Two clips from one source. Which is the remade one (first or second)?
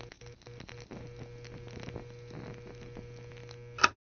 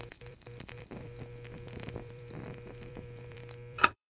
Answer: second